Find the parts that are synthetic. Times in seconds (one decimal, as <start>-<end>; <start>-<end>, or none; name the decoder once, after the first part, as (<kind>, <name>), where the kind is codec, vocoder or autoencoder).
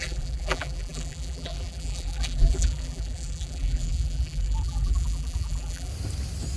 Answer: 0.0-5.9 (vocoder, BigVGAN v2)